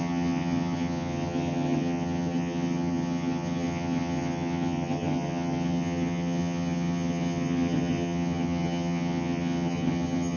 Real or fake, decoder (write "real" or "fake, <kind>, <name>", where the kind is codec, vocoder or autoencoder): fake, vocoder, HiFi-GAN